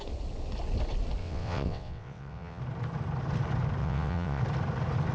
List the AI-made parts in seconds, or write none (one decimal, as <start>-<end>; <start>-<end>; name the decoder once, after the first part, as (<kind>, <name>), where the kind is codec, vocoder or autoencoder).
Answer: 1.2-2.6 (vocoder, WaveNeXt); 3.8-4.4